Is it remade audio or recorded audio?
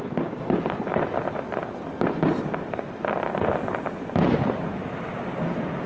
recorded